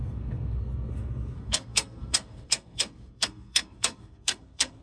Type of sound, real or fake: fake